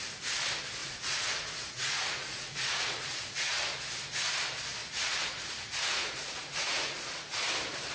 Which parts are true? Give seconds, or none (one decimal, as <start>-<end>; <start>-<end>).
0.0-0.8; 3.6-4.8; 7.4-7.9